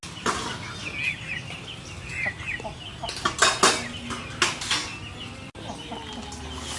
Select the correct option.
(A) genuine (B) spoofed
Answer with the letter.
A